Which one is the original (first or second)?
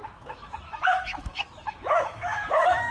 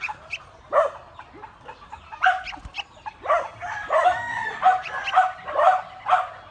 second